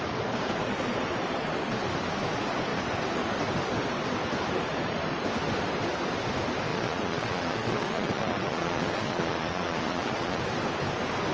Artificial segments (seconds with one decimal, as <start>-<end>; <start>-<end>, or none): 6.7-10.4